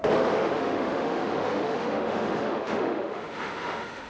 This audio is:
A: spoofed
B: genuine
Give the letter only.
A